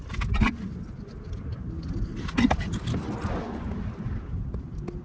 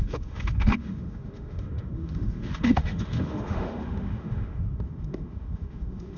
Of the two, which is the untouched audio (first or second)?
first